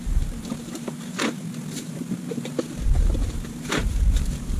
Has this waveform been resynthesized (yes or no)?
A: yes